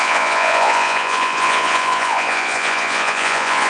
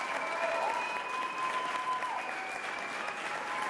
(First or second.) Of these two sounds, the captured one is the second